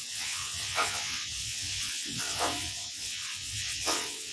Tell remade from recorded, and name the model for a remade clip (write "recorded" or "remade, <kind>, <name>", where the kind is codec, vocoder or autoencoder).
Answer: remade, vocoder, WaveNeXt